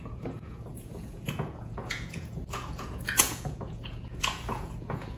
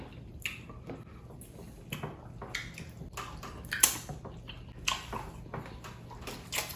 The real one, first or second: second